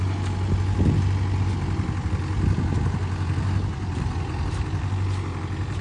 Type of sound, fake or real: real